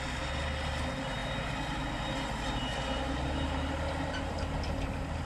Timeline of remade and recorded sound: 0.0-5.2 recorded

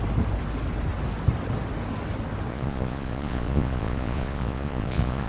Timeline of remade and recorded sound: 0.0-2.5 recorded; 2.5-5.3 remade

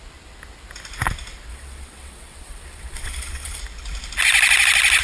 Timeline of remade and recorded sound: 0.0-1.5 recorded; 1.5-3.6 remade; 3.6-5.0 recorded

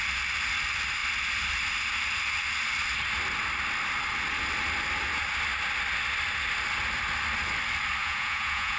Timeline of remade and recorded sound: 0.0-8.0 recorded; 8.0-8.8 remade

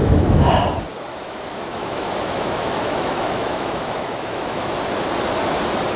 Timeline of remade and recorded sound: 0.0-0.5 remade; 0.5-1.1 recorded; 1.1-4.7 remade; 4.7-6.0 recorded

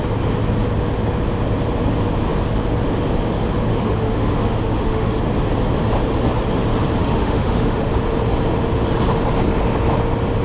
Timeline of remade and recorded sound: 0.0-3.7 recorded; 3.7-5.2 remade; 5.2-7.0 recorded; 7.0-7.9 remade; 7.9-10.4 recorded